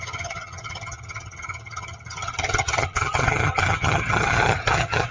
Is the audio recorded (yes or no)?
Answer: no